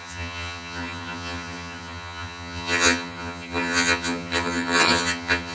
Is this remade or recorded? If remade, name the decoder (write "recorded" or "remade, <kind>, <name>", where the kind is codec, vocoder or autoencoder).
remade, vocoder, HiFi-GAN